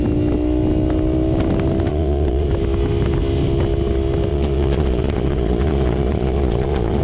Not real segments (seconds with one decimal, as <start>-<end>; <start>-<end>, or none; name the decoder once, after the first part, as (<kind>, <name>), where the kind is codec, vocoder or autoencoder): 1.9-2.5 (vocoder, Vocos); 4.3-7.0